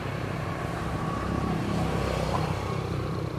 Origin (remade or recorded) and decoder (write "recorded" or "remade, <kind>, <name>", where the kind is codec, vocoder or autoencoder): remade, vocoder, BigVGAN v2